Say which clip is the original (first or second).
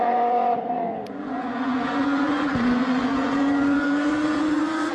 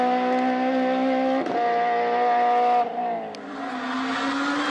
second